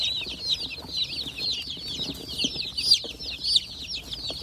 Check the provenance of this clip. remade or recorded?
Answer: recorded